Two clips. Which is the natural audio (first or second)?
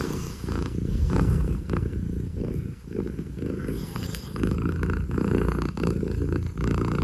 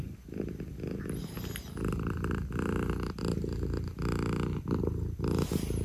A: second